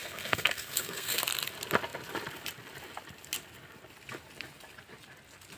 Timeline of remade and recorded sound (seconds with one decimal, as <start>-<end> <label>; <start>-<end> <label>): 0.0-1.2 remade; 1.2-5.6 recorded